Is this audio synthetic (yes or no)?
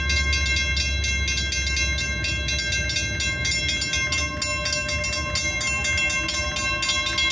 no